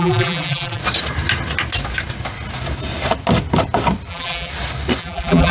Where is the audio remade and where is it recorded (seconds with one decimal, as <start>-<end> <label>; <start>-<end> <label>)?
0.0-0.8 remade; 0.8-4.1 recorded; 4.1-4.5 remade; 4.5-5.0 recorded; 5.0-5.5 remade

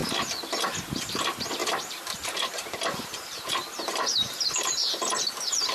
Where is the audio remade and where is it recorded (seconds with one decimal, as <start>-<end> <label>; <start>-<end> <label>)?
0.0-1.6 recorded; 1.6-5.0 remade; 5.0-5.7 recorded